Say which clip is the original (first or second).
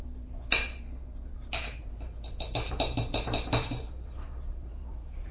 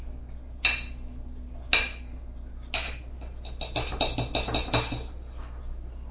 second